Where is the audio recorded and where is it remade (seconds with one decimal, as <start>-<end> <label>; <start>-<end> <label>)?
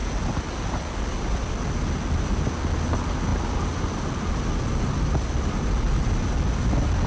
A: 0.0-7.1 recorded